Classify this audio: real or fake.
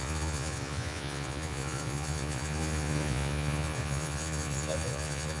fake